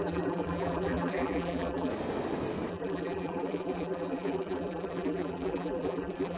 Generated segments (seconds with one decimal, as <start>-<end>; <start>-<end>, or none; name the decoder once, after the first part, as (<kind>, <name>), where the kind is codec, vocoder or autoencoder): 0.0-1.9 (vocoder, BigVGAN v2); 2.7-6.4